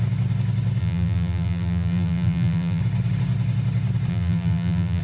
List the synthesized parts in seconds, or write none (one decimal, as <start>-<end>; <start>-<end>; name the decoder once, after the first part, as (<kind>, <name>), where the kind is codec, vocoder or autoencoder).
0.8-2.8 (vocoder, BigVGAN v2); 4.1-5.0